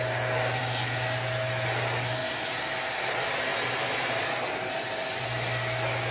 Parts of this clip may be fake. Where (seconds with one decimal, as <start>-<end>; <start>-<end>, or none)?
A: none